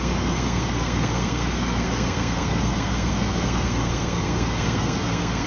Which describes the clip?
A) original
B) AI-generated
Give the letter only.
B